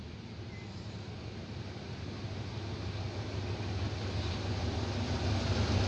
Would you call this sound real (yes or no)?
yes